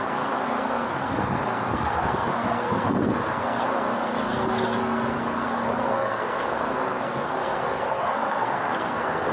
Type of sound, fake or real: fake